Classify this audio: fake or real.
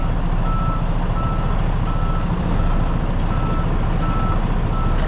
real